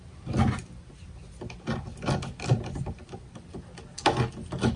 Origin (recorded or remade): recorded